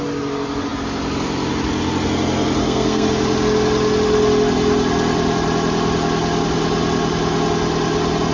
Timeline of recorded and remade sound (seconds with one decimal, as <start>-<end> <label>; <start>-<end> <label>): 0.0-2.6 recorded; 2.6-3.1 remade; 3.1-8.3 recorded